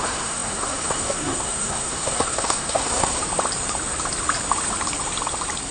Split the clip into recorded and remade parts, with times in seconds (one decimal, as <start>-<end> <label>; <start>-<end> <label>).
0.0-3.2 remade; 3.2-5.7 recorded

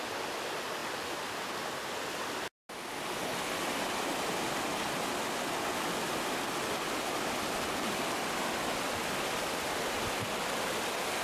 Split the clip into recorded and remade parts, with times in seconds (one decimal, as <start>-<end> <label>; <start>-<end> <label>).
0.0-11.2 recorded